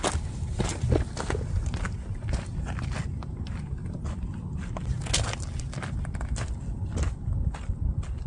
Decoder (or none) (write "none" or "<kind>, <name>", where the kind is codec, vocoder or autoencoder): none